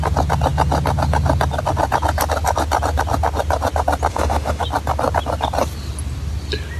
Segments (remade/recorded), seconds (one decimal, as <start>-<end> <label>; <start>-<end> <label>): 0.0-4.1 recorded; 4.1-4.6 remade; 4.6-6.8 recorded